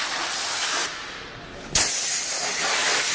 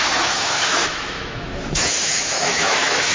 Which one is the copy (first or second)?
second